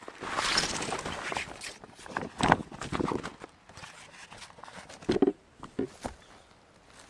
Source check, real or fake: real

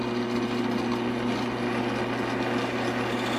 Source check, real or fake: real